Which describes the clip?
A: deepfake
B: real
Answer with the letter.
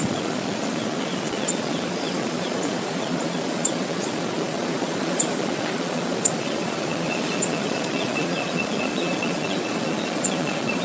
A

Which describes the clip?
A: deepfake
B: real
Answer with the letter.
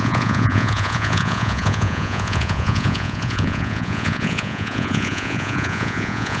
A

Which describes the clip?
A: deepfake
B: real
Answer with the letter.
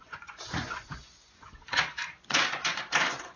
A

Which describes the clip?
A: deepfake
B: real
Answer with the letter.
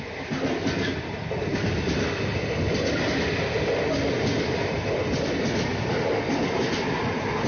B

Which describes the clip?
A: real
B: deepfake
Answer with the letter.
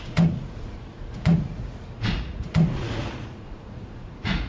B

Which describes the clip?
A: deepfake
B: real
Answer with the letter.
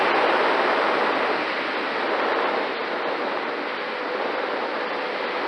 B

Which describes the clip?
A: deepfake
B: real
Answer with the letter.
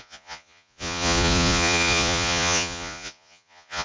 A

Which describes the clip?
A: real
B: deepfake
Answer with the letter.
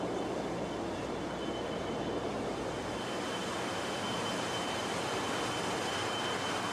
A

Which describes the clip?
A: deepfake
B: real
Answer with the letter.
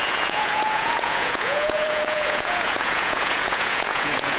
A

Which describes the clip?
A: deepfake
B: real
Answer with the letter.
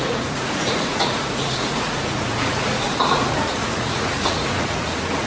A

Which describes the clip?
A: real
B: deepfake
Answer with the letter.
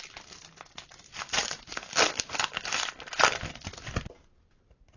A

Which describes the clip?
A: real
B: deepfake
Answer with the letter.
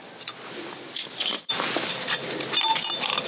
A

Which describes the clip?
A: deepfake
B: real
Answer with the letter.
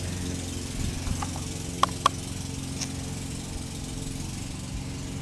B